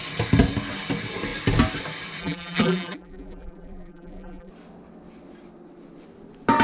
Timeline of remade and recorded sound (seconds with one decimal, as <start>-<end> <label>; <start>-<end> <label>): 0.0-2.2 recorded; 2.2-4.5 remade; 4.5-6.6 recorded